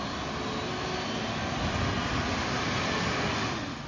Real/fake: real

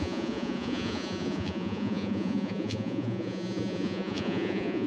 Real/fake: fake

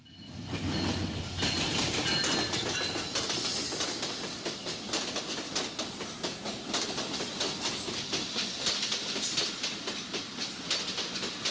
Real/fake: real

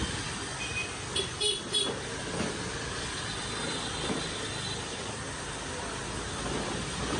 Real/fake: real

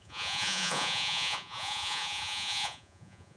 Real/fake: fake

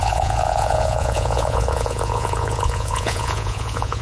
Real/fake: fake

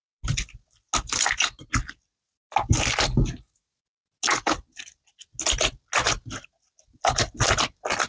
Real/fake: real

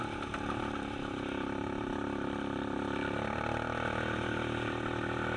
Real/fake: real